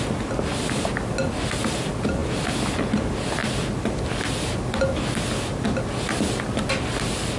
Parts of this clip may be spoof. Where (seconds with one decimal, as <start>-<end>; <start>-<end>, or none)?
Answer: none